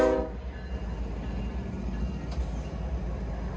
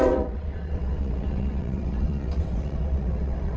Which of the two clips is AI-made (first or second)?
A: second